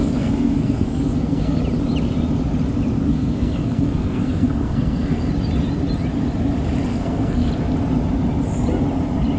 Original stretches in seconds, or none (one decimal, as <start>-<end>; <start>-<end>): 1.6-3.1; 5.3-6.9; 7.5-9.4